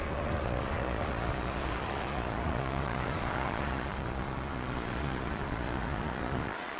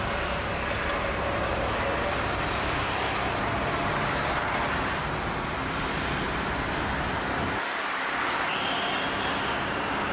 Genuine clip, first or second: second